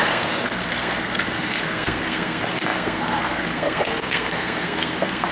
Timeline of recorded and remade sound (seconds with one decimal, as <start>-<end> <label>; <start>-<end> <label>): 0.0-5.3 remade

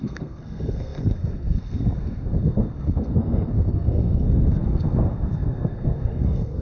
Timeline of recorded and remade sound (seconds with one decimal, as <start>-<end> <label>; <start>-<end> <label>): 0.0-6.6 remade

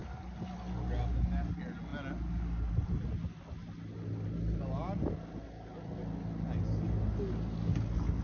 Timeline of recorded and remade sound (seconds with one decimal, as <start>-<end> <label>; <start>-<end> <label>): 0.0-8.2 recorded